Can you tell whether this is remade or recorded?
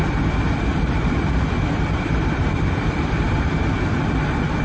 remade